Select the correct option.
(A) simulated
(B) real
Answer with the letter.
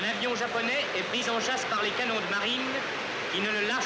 B